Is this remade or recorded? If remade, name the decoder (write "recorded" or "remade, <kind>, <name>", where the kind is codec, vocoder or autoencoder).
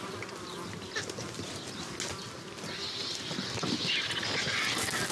recorded